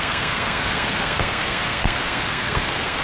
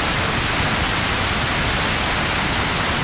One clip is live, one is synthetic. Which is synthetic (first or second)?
first